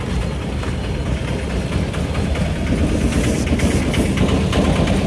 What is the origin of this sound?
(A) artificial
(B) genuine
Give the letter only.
B